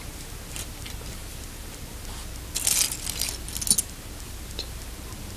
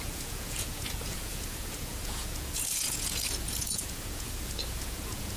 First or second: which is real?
first